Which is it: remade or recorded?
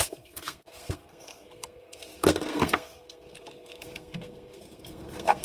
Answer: remade